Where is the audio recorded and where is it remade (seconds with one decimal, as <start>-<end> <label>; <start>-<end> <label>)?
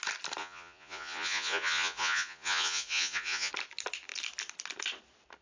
0.0-0.4 recorded; 0.4-3.5 remade; 3.5-5.4 recorded